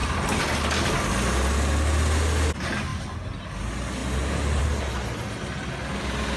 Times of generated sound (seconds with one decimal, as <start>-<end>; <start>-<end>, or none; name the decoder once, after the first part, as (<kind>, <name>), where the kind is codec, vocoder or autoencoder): none